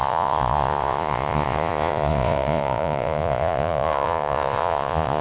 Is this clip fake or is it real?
fake